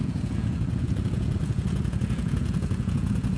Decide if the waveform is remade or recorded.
remade